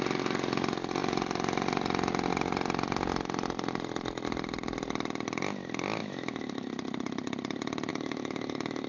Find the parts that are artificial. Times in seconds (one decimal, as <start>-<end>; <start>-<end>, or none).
6.0-6.7; 7.9-8.9